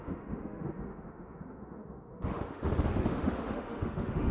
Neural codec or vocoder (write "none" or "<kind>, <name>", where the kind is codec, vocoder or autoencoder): autoencoder, DAC-VAE